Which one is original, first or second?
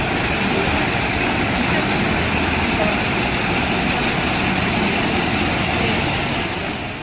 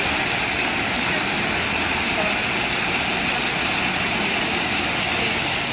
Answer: second